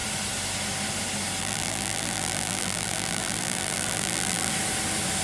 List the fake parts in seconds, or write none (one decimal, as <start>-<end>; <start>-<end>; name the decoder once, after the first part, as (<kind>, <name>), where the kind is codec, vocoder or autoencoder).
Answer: 1.4-4.5 (vocoder, BigVGAN v2)